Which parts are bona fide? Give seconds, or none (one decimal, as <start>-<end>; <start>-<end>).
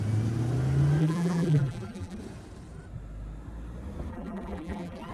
0.0-1.0; 2.2-4.1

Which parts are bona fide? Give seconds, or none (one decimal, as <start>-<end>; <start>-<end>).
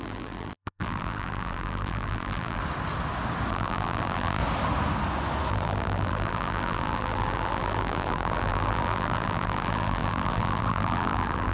2.6-3.5; 4.4-5.5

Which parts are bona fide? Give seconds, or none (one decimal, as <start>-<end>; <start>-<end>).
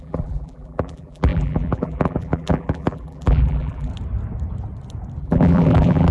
3.9-5.2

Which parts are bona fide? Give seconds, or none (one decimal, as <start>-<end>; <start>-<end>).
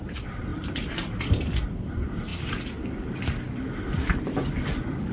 2.3-4.2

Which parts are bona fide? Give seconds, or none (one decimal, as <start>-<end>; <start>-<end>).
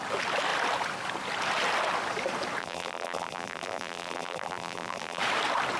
0.0-2.6; 5.2-5.8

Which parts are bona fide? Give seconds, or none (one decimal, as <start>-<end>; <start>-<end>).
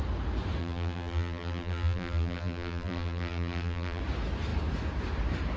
0.0-0.6; 4.0-5.6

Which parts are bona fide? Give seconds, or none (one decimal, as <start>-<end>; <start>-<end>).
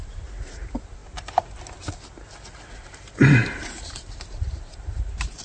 0.0-1.0; 1.9-3.4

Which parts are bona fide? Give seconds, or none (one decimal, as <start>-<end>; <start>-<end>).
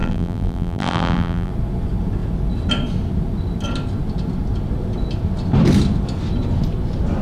1.5-7.2